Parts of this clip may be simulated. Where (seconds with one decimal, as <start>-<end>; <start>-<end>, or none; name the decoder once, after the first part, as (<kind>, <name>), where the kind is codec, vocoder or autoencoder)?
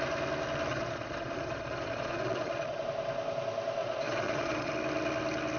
0.7-2.8 (vocoder, Vocos); 3.8-4.7